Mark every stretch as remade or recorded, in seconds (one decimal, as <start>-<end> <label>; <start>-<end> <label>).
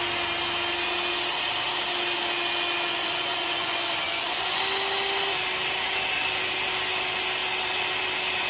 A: 0.0-2.9 recorded; 2.9-4.6 remade; 4.6-8.5 recorded